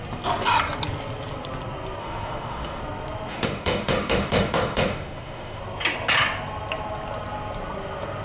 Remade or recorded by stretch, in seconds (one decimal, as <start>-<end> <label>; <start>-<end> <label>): 0.0-2.0 recorded; 2.0-2.8 remade; 2.8-3.3 recorded; 3.3-5.6 remade; 5.6-8.2 recorded